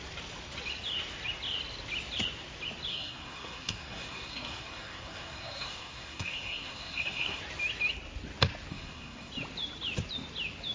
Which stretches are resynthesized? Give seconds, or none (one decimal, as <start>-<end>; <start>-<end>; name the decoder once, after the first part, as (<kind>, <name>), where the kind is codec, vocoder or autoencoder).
2.9-7.4 (codec, SNAC); 8.7-9.3